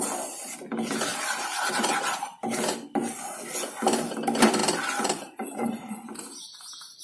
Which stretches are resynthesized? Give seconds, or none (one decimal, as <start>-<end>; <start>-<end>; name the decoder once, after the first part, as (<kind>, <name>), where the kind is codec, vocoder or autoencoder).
1.1-2.4 (vocoder, BigVGAN v2); 4.6-7.0